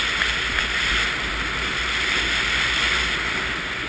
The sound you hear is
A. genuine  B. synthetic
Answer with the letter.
A